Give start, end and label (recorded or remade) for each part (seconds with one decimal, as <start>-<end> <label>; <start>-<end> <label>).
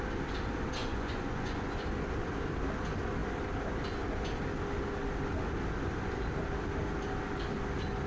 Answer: 0.0-0.8 recorded; 0.8-1.7 remade; 1.7-8.1 recorded